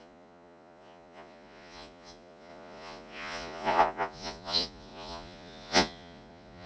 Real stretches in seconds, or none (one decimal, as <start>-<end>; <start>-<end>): none